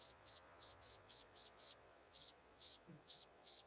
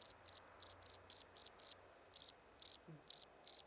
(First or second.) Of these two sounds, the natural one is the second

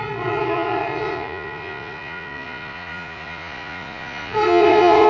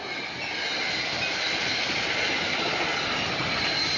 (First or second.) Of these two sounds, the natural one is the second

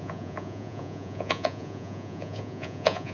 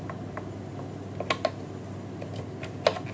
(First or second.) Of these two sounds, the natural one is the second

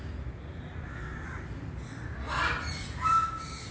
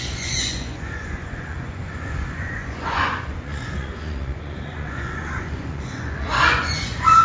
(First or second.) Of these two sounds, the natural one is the first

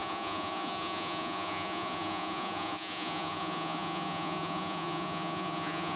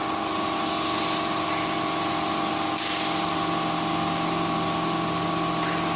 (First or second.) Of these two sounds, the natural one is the second